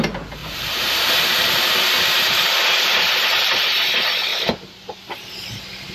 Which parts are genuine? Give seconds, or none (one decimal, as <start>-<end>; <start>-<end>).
0.0-0.4; 3.9-4.3; 5.2-5.9